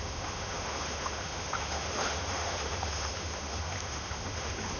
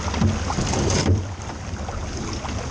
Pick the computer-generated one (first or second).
first